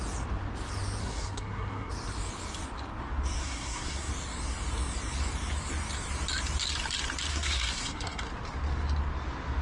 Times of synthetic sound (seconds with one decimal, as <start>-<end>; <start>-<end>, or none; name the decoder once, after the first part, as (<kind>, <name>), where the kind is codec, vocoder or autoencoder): 1.0-1.9 (codec, SNAC); 3.4-4.1; 7.3-8.3